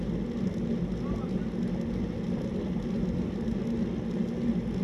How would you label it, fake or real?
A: real